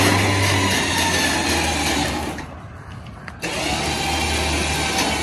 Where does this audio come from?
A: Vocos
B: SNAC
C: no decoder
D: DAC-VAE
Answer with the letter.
C